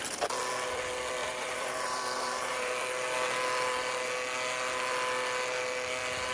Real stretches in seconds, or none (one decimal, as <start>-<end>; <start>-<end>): 0.0-1.2; 2.7-6.3